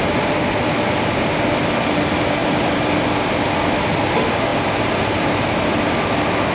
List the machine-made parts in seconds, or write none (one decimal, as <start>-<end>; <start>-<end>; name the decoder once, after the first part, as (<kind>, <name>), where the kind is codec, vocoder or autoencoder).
2.4-2.9 (vocoder, BigVGAN v2); 4.5-5.3